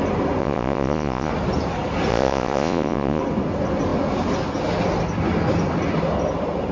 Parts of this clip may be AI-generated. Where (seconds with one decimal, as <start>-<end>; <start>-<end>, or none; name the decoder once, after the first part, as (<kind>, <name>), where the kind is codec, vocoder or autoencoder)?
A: 0.4-1.3 (vocoder, Vocos); 2.1-3.2